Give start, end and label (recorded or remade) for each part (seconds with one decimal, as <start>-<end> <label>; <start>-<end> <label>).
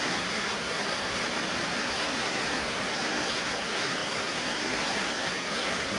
0.0-1.2 remade; 1.2-1.8 recorded; 1.8-6.0 remade